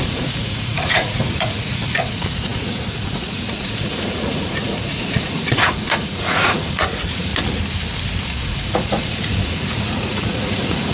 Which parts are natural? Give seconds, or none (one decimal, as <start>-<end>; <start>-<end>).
7.3-8.2